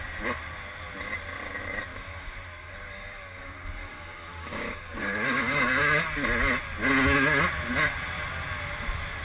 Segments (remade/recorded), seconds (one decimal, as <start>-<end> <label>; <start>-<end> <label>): 0.0-1.9 recorded; 1.9-3.4 remade; 3.4-3.8 recorded; 3.8-5.8 remade; 5.8-9.2 recorded